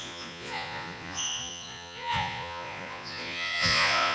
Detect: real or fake fake